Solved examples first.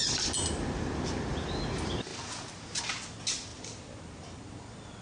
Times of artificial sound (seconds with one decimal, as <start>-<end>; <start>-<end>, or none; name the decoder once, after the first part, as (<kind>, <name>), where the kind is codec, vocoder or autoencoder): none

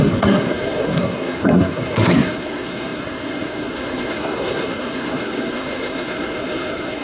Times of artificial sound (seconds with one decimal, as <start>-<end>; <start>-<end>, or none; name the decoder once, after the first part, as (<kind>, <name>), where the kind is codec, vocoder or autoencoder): 0.0-7.0 (codec, SNAC)

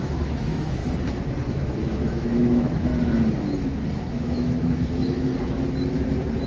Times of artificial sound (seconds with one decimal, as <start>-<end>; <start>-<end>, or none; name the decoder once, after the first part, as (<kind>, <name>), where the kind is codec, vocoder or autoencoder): 0.0-0.8 (autoencoder, DAC-VAE); 1.5-2.9; 4.1-5.3

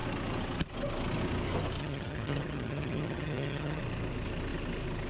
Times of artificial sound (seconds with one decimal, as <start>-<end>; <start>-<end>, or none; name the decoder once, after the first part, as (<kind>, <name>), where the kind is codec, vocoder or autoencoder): 1.8-3.8 (vocoder, HiFi-GAN)

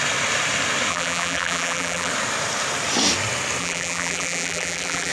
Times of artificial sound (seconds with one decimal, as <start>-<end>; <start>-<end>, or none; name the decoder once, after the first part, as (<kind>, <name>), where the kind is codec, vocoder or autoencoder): 0.9-2.1 (vocoder, BigVGAN v2); 3.6-5.1

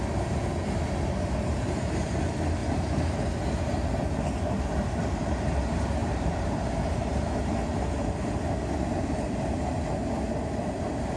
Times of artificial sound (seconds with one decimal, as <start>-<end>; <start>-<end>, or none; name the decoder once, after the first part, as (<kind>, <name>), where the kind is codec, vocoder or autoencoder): 2.6-3.2 (vocoder, BigVGAN v2); 6.0-7.5

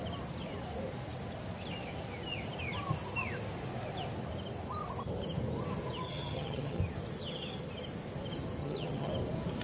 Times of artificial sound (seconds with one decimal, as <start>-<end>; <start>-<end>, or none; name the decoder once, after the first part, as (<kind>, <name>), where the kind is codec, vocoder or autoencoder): 6.1-6.8 (vocoder, HiFi-GAN); 8.6-9.1